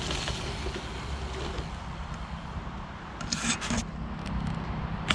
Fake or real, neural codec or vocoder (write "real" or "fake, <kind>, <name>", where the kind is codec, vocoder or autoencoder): real